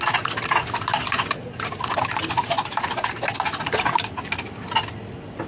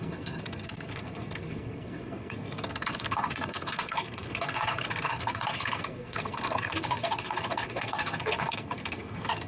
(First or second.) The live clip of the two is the first